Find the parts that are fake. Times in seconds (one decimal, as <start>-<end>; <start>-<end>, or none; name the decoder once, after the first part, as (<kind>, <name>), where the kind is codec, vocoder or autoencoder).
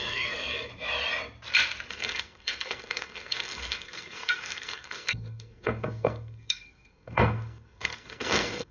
0.0-0.7 (codec, SNAC); 1.9-8.7